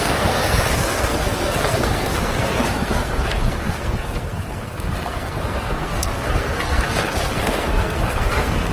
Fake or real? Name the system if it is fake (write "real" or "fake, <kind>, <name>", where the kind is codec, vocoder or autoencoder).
fake, codec, SNAC